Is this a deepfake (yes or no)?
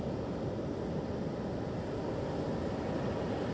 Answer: no